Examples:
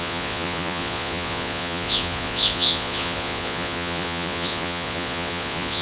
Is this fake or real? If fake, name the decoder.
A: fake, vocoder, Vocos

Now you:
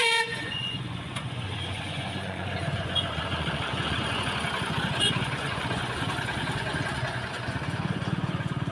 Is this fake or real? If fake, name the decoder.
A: fake, vocoder, Vocos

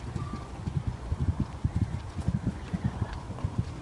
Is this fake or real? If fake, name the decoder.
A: fake, vocoder, Vocos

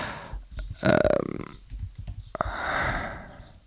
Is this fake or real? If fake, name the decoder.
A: real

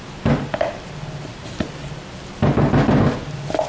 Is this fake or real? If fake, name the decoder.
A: real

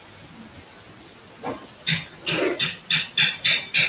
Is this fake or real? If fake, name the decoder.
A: real